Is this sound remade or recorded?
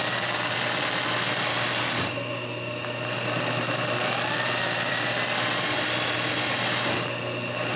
recorded